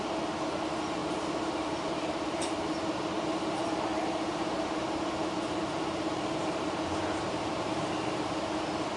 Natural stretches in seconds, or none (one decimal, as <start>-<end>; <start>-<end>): 0.0-1.0; 3.0-4.3; 7.9-9.0